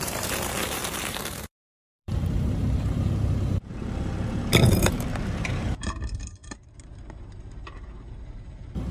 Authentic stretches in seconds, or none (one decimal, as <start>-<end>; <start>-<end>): none